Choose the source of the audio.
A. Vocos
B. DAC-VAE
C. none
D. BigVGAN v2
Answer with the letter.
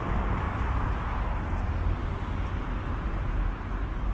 C